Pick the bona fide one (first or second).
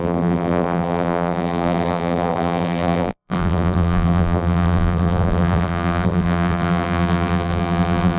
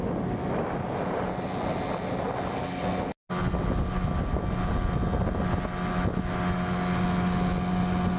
second